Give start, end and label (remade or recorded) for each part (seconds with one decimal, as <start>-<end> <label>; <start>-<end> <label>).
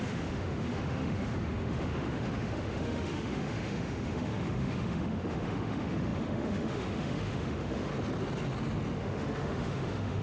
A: 0.0-7.9 remade; 7.9-9.0 recorded; 9.0-10.2 remade